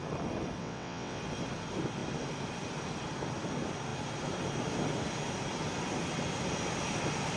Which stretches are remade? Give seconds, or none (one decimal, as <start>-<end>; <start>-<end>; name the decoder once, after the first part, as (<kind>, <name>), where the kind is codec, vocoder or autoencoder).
0.6-1.2 (vocoder, WaveNeXt)